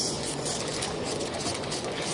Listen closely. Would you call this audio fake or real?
fake